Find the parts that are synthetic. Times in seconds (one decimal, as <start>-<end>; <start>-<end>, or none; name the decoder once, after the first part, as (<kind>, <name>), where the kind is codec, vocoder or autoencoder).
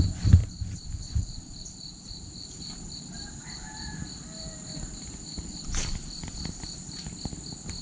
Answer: 0.4-2.6 (vocoder, BigVGAN v2)